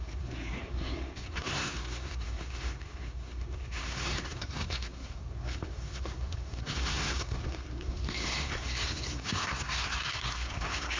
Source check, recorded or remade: remade